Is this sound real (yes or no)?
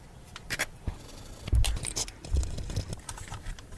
yes